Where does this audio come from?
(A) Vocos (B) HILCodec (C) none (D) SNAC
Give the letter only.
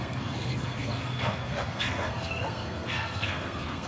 D